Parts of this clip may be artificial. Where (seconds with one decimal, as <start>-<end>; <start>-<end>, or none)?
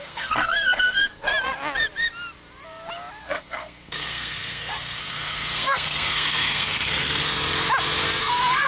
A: 0.0-1.3; 3.2-7.2; 8.2-8.7